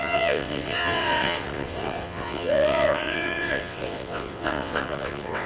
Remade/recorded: remade